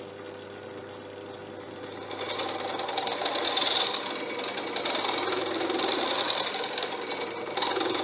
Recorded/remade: recorded